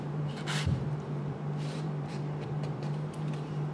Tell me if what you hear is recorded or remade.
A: remade